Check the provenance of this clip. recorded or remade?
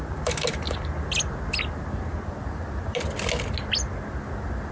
recorded